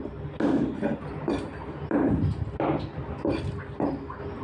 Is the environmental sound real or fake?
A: real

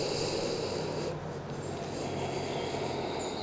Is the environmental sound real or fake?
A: real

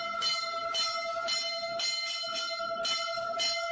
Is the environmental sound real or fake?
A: real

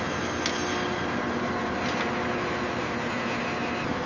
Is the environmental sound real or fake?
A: real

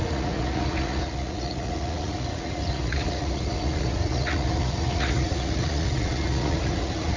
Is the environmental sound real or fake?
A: fake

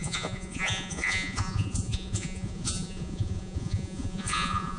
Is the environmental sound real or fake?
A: fake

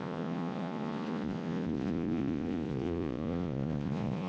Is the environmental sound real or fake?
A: fake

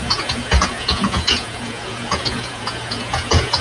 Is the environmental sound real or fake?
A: fake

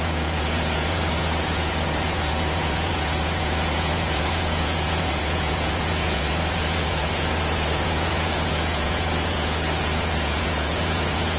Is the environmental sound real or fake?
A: fake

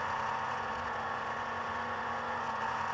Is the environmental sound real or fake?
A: fake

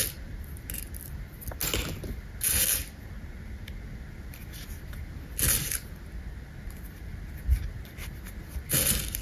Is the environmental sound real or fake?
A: real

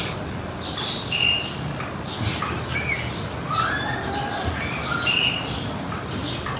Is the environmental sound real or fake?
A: real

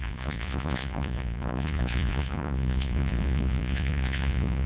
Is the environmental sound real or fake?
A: fake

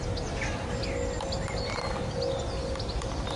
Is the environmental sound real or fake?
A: real